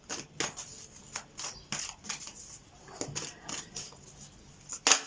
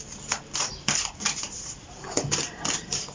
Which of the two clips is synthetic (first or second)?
second